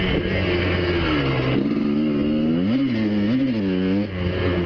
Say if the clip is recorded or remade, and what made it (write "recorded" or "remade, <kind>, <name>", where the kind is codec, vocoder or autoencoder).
recorded